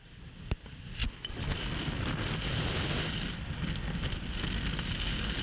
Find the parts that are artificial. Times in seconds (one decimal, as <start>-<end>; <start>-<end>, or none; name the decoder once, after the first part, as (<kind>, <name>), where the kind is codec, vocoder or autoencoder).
none